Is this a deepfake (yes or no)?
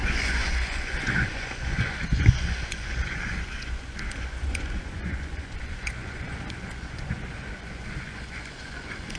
yes